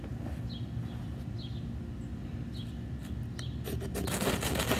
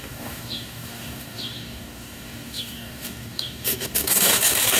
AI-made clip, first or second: second